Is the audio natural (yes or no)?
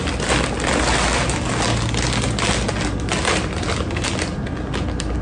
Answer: yes